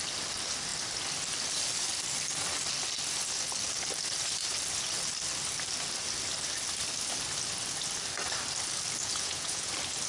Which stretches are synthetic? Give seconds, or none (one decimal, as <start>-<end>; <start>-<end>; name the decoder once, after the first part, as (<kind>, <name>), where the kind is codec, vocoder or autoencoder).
9.0-9.7 (vocoder, Vocos)